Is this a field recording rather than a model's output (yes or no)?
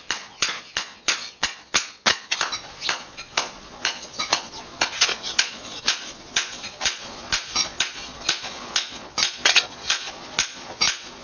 no